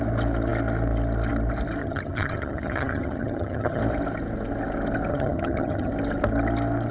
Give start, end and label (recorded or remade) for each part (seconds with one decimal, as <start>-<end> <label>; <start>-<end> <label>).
0.0-1.8 recorded; 1.8-3.8 remade; 3.8-5.1 recorded; 5.1-5.9 remade; 5.9-6.9 recorded